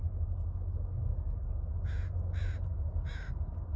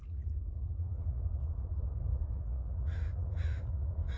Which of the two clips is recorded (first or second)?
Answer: first